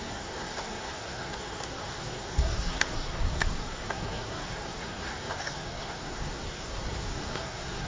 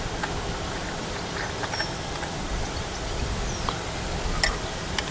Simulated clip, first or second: first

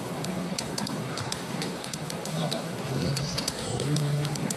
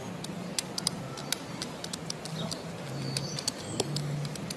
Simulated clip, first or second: first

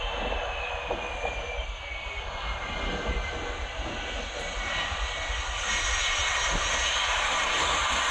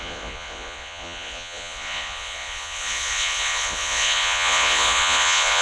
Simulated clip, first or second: second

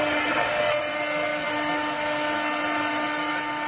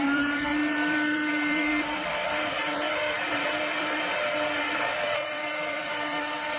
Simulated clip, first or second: second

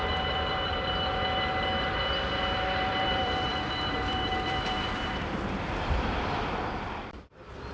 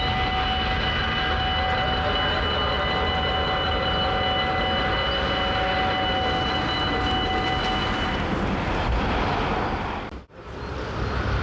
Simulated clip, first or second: first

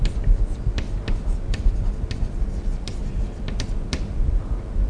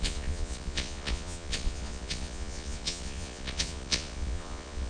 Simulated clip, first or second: second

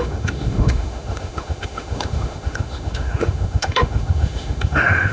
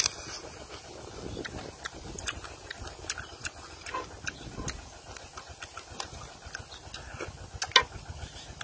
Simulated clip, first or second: first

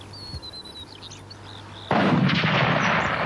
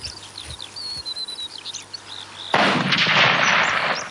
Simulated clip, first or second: second